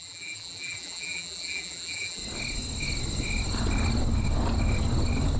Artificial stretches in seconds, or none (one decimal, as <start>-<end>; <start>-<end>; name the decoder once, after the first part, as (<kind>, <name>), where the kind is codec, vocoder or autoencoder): 0.0-2.2 (vocoder, BigVGAN v2)